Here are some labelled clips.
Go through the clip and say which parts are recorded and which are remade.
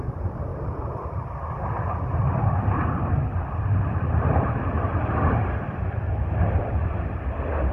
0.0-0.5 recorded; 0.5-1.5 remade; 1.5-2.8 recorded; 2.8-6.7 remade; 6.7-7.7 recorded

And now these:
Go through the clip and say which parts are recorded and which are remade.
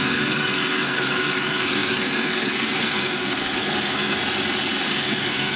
0.0-4.2 remade; 4.2-4.9 recorded; 4.9-5.6 remade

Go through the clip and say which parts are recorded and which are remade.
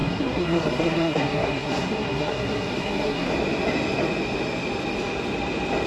0.0-3.3 remade; 3.3-5.9 recorded